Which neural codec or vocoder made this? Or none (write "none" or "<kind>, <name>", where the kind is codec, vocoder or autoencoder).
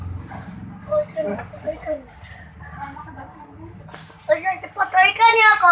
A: none